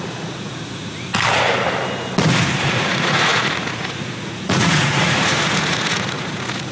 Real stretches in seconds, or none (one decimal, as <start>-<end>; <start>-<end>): 1.1-2.6